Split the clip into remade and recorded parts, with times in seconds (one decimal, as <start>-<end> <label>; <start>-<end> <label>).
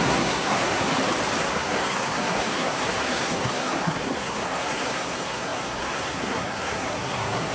0.0-0.9 remade; 0.9-1.4 recorded; 1.4-7.5 remade